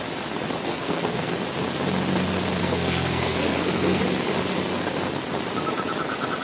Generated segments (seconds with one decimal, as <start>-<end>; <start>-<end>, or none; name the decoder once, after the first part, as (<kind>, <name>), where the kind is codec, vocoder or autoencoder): 0.7-1.4 (codec, SNAC); 2.6-4.0